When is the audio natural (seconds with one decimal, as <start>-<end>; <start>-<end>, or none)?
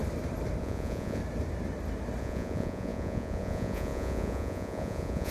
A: 0.0-0.6; 1.2-2.2